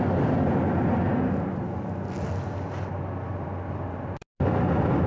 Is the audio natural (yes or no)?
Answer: yes